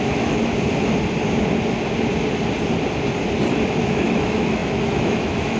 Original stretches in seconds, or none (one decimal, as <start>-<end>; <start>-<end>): 0.4-3.8